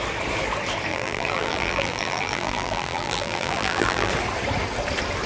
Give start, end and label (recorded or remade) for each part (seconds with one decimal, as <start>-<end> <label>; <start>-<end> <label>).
0.0-0.9 recorded; 0.9-4.1 remade; 4.1-5.3 recorded